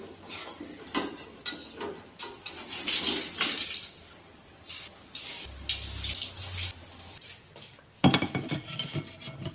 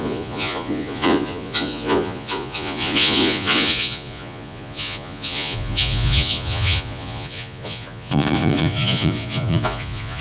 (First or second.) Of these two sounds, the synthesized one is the second